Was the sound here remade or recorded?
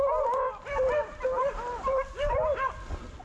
recorded